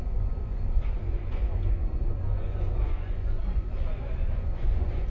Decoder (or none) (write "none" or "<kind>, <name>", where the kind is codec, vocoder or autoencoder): vocoder, Vocos